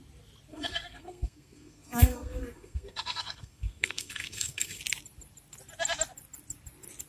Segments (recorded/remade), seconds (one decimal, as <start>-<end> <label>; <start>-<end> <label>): 0.0-0.5 recorded; 0.5-4.8 remade; 4.8-7.1 recorded